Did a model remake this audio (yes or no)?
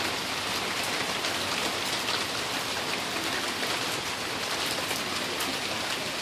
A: no